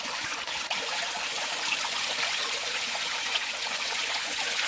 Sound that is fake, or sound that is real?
fake